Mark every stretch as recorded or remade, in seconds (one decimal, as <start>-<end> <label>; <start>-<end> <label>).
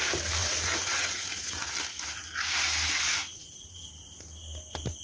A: 0.0-0.4 recorded; 0.4-1.7 remade; 1.7-3.2 recorded; 3.2-3.8 remade; 3.8-5.0 recorded